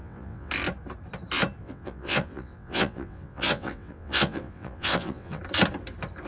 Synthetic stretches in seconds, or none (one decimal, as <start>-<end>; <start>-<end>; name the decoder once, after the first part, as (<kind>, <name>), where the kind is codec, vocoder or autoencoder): 0.0-0.5 (vocoder, WaveNeXt); 1.6-5.4